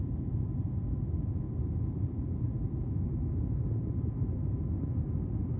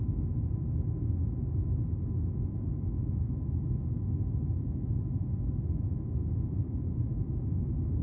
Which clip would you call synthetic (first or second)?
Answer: second